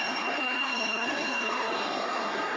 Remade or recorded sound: remade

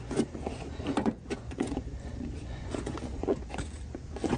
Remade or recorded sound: remade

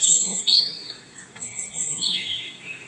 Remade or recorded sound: remade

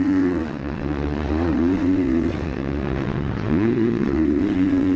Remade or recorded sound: remade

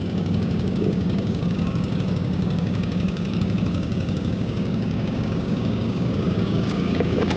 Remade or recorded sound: remade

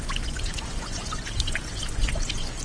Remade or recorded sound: remade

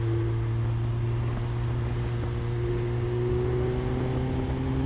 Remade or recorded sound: recorded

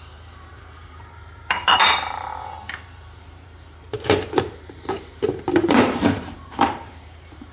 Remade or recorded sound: remade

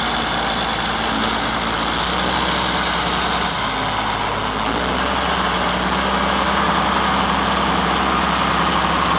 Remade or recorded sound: recorded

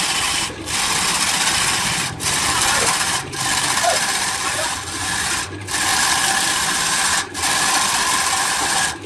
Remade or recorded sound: recorded